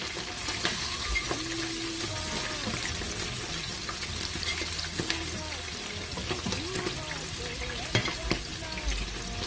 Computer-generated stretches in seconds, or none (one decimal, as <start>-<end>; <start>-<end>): none